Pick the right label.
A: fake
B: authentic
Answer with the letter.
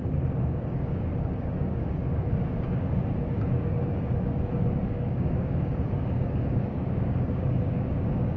A